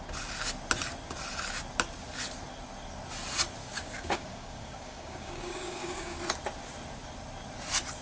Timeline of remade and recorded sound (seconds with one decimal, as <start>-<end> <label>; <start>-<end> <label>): 0.0-3.6 recorded; 3.6-6.2 remade; 6.2-8.0 recorded